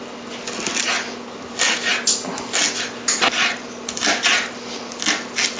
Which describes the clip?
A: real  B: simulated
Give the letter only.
A